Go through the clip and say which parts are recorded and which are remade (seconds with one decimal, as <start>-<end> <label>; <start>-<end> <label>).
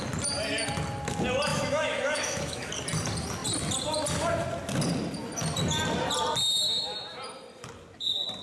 0.0-1.5 recorded; 1.5-2.7 remade; 2.7-8.4 recorded